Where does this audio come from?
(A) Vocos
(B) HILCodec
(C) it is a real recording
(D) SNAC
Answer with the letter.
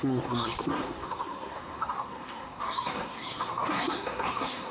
D